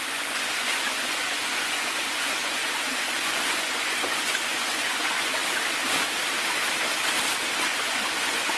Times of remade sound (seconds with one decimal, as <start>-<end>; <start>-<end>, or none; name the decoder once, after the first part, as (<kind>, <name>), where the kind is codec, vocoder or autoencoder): 0.0-5.4 (vocoder, Vocos); 7.6-8.6